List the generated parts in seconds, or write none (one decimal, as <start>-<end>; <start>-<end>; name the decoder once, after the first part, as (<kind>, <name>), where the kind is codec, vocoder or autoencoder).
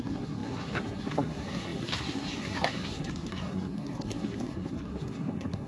0.0-5.7 (codec, SNAC)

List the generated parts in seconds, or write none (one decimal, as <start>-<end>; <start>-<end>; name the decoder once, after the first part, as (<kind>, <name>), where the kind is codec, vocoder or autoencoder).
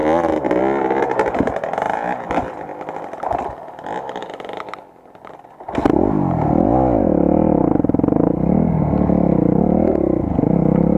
none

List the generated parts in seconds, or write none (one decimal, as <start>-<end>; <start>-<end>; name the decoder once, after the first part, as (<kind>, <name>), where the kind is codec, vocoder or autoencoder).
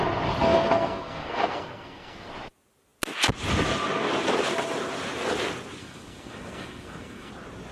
0.4-2.3 (codec, SNAC); 5.8-7.3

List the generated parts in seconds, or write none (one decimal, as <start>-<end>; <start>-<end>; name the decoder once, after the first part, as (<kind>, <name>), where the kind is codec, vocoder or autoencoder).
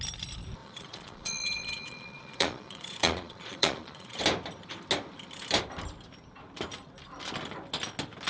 0.6-4.2 (vocoder, Vocos)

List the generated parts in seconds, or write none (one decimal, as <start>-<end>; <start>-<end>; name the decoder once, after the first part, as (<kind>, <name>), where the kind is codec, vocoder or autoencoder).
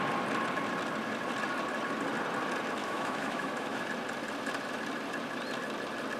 2.8-3.8 (autoencoder, DAC-VAE)